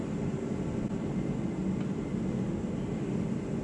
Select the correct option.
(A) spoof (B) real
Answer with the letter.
B